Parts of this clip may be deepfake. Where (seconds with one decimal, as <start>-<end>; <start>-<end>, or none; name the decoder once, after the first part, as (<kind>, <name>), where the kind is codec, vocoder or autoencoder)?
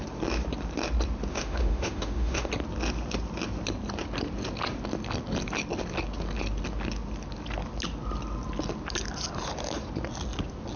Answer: 1.3-2.5 (autoencoder, DAC-VAE)